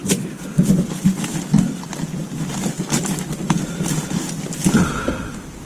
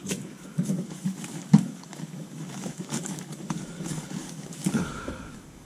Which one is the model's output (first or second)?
second